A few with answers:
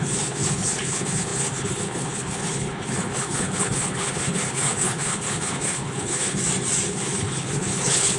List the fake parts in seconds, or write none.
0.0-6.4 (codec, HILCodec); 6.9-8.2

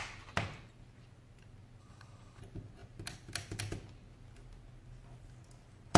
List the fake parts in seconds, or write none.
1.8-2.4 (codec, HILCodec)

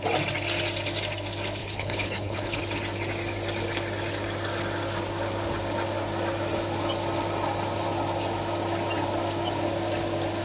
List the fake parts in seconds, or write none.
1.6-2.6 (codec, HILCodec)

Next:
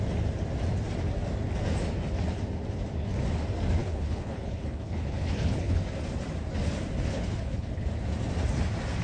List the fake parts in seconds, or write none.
3.8-5.8 (codec, HILCodec); 7.1-7.9